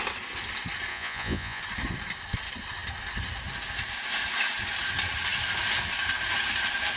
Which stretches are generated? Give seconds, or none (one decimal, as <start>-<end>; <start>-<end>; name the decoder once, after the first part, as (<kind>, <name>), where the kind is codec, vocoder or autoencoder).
0.9-1.6 (vocoder, Vocos)

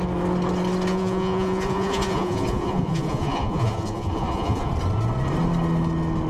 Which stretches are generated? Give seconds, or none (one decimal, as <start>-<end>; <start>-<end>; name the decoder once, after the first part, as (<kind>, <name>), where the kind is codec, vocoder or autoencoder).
0.9-4.7 (vocoder, Vocos)

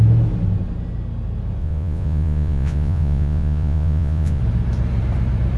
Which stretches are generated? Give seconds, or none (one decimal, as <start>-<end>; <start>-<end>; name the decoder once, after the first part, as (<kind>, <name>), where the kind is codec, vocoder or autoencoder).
1.6-4.4 (vocoder, Vocos)

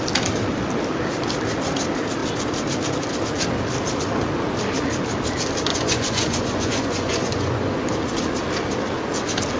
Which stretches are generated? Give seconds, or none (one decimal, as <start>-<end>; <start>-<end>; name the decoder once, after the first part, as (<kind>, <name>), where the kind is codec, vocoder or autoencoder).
5.7-7.9 (vocoder, Vocos)

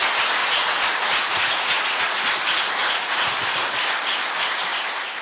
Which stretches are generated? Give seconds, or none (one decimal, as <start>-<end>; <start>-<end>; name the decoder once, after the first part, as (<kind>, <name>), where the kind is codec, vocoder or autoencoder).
0.4-2.2 (vocoder, Vocos); 2.8-3.3

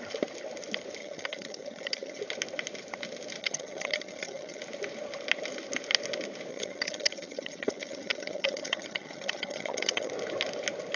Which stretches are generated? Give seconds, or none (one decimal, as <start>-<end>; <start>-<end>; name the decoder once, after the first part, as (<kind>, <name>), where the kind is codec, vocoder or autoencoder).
1.0-2.2 (vocoder, HiFi-GAN); 3.4-4.6; 6.5-10.1

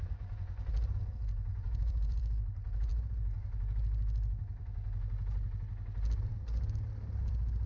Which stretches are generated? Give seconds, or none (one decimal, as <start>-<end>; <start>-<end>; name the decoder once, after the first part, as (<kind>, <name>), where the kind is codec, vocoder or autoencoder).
0.0-0.7 (vocoder, Vocos); 1.5-2.2